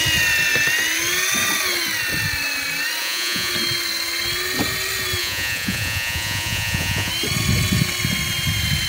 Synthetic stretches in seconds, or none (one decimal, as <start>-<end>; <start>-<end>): 3.0-3.5; 5.2-7.1